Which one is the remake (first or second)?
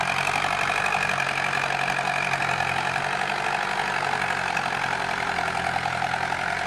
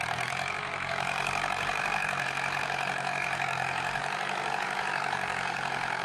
second